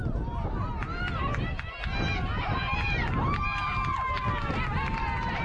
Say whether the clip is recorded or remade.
recorded